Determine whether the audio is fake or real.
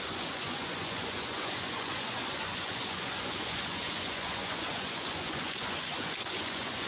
fake